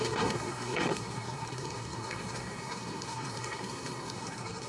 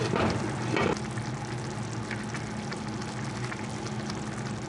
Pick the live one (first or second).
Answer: second